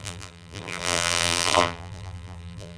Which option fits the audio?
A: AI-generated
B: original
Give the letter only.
A